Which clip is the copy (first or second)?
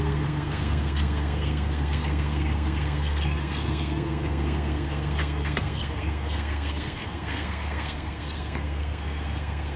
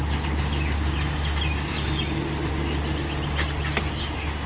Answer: first